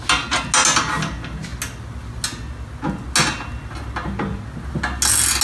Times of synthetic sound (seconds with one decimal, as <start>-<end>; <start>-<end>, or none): none